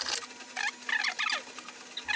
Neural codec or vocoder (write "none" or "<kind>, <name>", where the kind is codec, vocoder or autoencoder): none